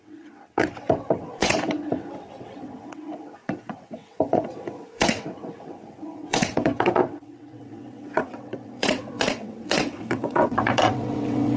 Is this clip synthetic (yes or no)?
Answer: yes